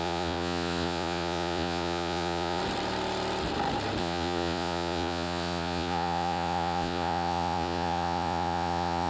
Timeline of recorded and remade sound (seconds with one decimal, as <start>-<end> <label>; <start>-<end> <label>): 0.0-2.6 remade; 2.6-4.0 recorded; 4.0-9.1 remade